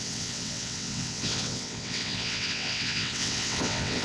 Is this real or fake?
fake